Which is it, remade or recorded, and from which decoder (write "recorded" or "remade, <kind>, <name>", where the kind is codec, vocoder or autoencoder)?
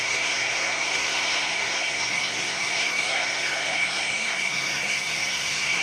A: remade, codec, SNAC